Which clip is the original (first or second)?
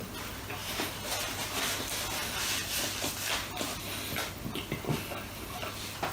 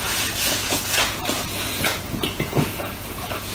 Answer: first